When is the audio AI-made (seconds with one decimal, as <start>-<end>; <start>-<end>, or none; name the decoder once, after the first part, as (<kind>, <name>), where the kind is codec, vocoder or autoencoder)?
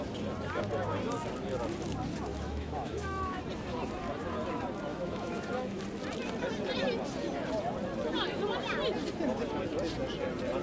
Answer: 2.3-3.4 (autoencoder, DAC-VAE); 4.9-5.8